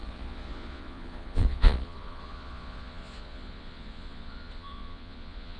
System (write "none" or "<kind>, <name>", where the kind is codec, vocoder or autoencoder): vocoder, Vocos